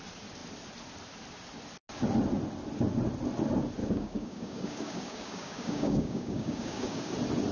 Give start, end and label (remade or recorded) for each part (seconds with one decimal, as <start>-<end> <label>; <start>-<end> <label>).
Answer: 0.0-3.8 recorded; 3.8-7.1 remade; 7.1-7.5 recorded

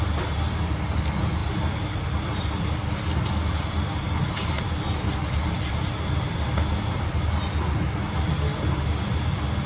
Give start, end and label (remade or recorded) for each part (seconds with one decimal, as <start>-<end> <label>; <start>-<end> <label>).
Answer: 0.0-9.7 recorded

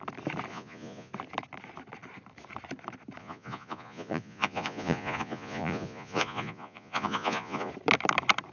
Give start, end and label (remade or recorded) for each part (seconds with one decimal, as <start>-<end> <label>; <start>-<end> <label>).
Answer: 0.0-0.5 recorded; 0.5-1.1 remade; 1.1-3.2 recorded; 3.2-7.7 remade; 7.7-8.5 recorded

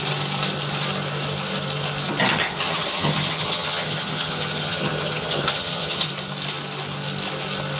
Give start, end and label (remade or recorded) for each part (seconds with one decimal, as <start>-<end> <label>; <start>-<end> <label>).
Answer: 0.0-2.3 recorded; 2.3-6.1 remade; 6.1-7.8 recorded